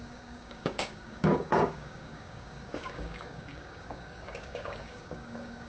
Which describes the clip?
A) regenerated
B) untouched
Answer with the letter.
A